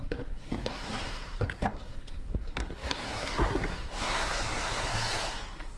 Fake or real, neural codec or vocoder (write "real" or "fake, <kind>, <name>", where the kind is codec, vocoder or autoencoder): fake, codec, SNAC